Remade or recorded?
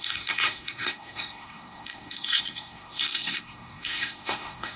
remade